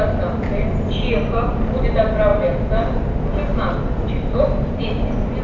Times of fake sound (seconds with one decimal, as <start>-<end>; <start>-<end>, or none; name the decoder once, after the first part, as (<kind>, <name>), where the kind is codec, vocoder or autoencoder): none